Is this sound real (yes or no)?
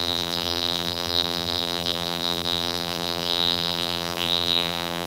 no